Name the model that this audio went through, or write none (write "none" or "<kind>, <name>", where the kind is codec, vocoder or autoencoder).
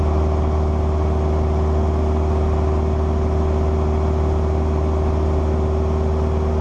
none